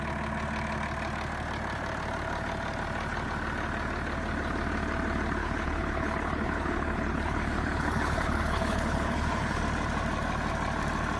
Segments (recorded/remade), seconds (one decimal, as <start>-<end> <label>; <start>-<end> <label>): 0.0-5.4 recorded; 5.4-9.6 remade; 9.6-11.2 recorded